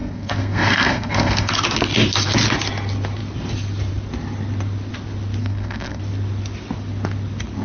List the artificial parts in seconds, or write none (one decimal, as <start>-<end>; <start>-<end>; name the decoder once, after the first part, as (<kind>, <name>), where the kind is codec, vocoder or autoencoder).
0.0-1.5 (codec, SNAC); 5.4-6.0

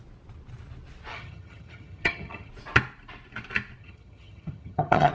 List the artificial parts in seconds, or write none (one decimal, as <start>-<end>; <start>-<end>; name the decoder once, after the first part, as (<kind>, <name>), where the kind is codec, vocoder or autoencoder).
1.1-2.5 (vocoder, HiFi-GAN); 3.8-5.1